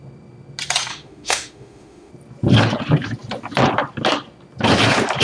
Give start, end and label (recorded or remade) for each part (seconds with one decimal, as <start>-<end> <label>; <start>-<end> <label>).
0.0-0.9 recorded; 0.9-2.1 remade; 2.1-5.2 recorded